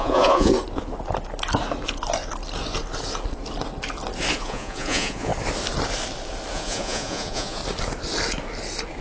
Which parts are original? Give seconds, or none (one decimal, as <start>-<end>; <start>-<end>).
0.5-4.3; 5.3-6.5; 7.6-9.0